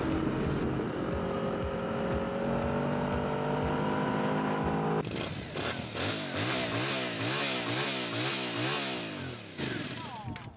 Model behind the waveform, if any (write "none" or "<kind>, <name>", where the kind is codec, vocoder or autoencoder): none